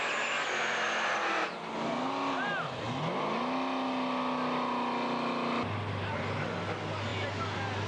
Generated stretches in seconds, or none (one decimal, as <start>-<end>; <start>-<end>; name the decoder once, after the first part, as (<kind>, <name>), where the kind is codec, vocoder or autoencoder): none